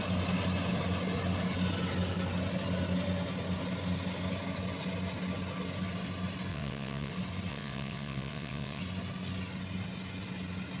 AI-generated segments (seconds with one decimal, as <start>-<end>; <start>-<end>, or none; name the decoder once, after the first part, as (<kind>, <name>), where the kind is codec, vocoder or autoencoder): 6.5-7.1 (vocoder, WaveNeXt); 7.5-8.8